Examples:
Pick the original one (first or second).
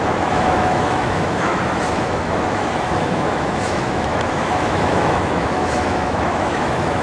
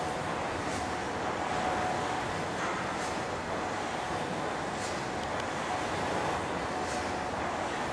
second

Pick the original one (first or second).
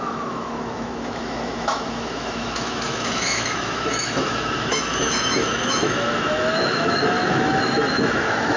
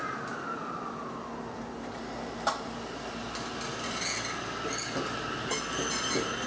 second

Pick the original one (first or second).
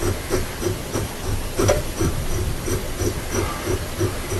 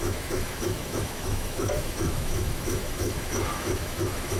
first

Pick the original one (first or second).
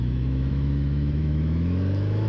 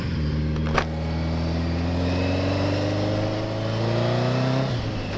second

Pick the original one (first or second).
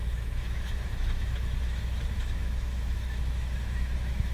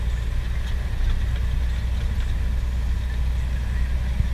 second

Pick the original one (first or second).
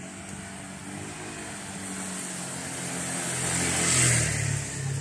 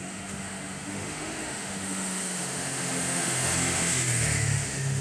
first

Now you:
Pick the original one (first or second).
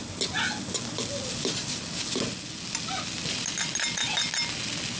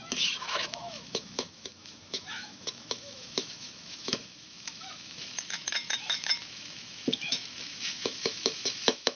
first